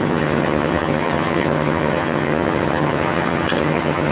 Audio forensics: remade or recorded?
remade